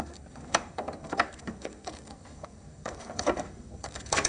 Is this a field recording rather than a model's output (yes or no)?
no